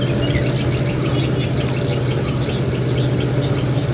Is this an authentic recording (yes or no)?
yes